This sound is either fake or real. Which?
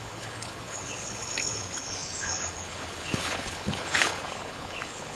fake